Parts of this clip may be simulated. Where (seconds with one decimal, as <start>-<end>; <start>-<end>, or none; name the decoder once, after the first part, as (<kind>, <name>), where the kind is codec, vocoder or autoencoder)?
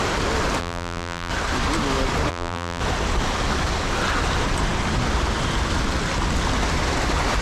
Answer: 0.6-1.3 (vocoder, BigVGAN v2); 2.3-2.8